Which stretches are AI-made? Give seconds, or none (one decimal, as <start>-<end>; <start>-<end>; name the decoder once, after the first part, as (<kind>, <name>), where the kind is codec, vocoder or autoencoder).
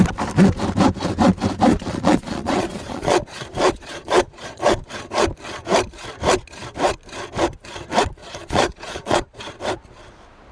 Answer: 1.7-4.9 (vocoder, Vocos); 8.2-9.4